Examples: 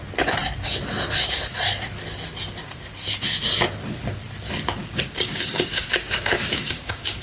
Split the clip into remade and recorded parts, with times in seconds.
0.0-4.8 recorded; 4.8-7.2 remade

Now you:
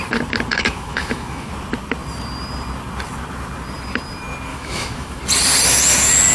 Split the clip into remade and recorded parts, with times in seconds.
0.0-0.5 recorded; 0.5-1.5 remade; 1.5-4.5 recorded; 4.5-5.2 remade; 5.2-6.3 recorded